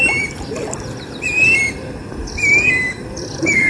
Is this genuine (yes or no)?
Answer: no